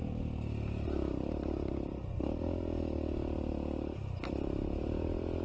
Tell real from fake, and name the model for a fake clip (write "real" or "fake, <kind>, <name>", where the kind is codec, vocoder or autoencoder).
real